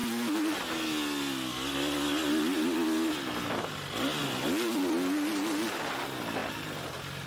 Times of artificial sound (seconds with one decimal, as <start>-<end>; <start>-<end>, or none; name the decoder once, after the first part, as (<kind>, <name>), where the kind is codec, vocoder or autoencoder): none